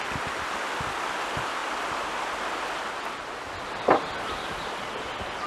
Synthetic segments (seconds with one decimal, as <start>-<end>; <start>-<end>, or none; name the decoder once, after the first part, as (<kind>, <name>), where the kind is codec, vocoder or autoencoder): none